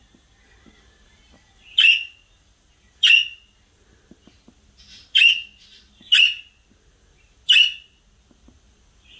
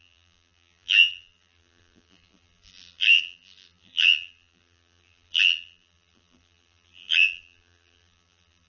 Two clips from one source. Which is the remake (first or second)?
second